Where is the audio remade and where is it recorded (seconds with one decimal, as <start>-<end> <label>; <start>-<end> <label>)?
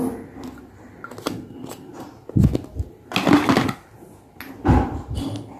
0.0-5.6 recorded